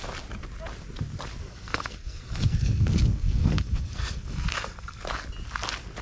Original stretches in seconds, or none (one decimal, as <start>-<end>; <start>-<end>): 0.0-1.4; 5.0-6.0